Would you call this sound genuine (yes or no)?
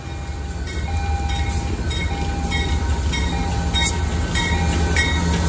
yes